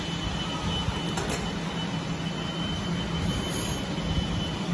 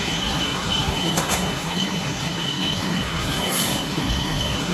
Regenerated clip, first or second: second